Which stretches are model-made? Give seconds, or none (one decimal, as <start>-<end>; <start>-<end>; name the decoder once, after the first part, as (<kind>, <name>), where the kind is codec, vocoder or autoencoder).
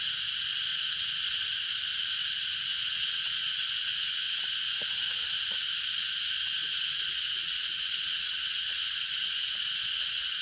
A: 0.7-1.4 (vocoder, WaveNeXt); 2.7-4.7; 6.6-10.4